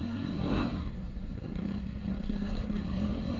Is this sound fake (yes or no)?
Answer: yes